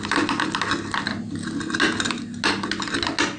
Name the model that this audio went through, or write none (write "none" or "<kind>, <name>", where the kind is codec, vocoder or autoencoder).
none